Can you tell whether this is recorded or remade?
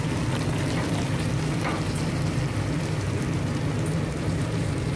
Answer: recorded